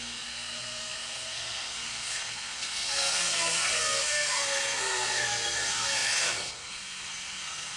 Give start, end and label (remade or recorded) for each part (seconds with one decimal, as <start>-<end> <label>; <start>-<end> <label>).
0.0-7.8 remade

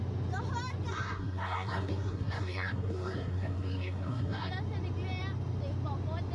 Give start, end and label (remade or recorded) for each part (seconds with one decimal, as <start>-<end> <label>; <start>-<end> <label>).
0.0-0.9 recorded; 0.9-4.5 remade; 4.5-6.3 recorded

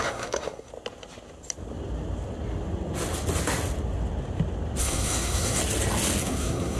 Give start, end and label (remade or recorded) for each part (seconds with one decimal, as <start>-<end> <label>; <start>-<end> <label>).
0.0-0.7 remade; 0.7-4.8 recorded; 4.8-5.6 remade; 5.6-6.2 recorded; 6.2-6.8 remade

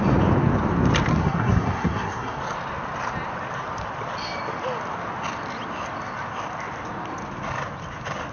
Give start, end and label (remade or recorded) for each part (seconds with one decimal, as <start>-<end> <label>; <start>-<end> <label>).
0.0-1.1 recorded; 1.1-2.4 remade; 2.4-8.3 recorded

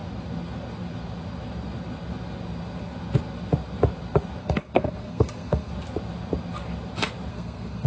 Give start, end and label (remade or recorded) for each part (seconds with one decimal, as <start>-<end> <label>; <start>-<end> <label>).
0.0-4.4 recorded; 4.4-5.7 remade; 5.7-7.3 recorded; 7.3-7.9 remade

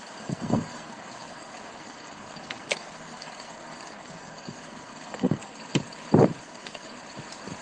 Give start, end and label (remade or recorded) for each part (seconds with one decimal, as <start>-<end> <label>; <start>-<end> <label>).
0.0-5.5 remade; 5.5-6.4 recorded; 6.4-6.9 remade; 6.9-7.6 recorded

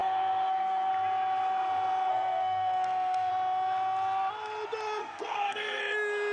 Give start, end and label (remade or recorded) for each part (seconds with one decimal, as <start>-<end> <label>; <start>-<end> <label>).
0.0-0.9 remade; 0.9-2.1 recorded; 2.1-3.3 remade; 3.3-5.0 recorded; 5.0-5.8 remade; 5.8-6.3 recorded

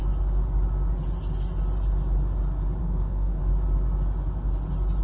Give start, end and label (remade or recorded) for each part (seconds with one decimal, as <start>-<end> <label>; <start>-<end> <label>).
0.0-2.8 recorded; 2.8-3.4 remade; 3.4-5.0 recorded